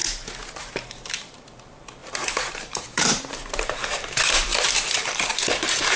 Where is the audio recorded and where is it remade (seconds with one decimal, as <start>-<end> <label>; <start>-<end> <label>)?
0.0-0.6 recorded; 0.6-4.5 remade; 4.5-5.3 recorded; 5.3-6.0 remade